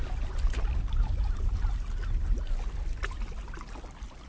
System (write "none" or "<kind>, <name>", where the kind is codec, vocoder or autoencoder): none